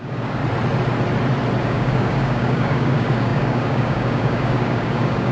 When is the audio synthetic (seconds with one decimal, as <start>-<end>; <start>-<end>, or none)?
0.0-0.4; 1.6-5.3